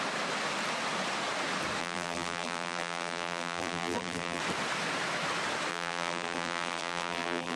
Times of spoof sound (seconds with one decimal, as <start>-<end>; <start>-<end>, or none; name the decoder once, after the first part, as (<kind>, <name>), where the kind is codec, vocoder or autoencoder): 1.8-4.4 (vocoder, BigVGAN v2); 5.7-7.6